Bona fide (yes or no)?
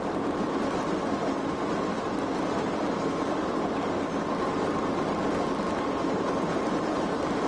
yes